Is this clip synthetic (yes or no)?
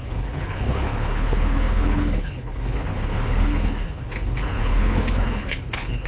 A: yes